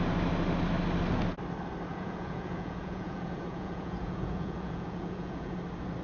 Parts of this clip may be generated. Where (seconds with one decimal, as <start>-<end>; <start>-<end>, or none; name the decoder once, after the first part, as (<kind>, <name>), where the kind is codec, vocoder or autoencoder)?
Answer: 1.9-5.5 (vocoder, Vocos)